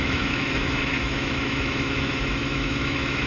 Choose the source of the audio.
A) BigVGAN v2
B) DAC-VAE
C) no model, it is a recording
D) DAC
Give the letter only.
B